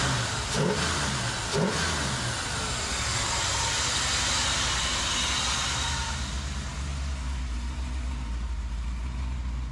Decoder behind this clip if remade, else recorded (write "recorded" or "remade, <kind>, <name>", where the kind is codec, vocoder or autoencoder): recorded